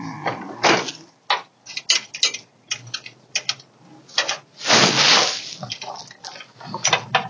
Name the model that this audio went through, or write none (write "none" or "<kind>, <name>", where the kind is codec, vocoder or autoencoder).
none